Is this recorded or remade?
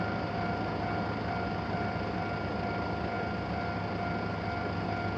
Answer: recorded